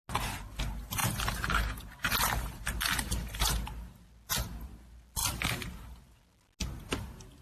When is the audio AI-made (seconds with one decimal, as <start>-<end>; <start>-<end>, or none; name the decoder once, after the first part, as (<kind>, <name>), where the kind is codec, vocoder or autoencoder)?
none